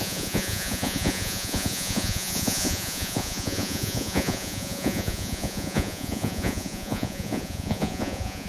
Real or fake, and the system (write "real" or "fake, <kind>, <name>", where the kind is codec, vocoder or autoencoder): fake, vocoder, Vocos